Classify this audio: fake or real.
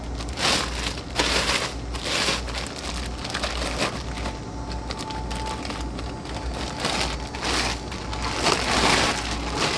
real